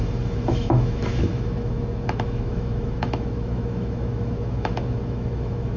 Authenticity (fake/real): fake